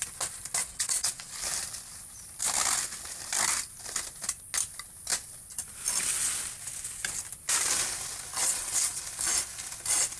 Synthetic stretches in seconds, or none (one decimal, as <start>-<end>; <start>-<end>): 0.6-1.3; 8.4-9.0